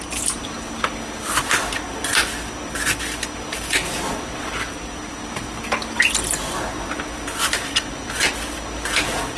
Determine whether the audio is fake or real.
real